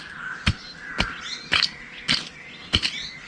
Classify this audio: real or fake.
real